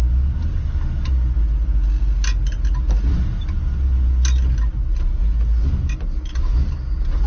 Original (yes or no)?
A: yes